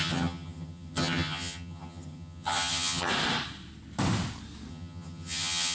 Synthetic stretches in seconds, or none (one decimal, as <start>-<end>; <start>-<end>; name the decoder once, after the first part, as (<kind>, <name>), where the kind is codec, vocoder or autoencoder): 0.0-3.1 (vocoder, HiFi-GAN); 4.7-5.7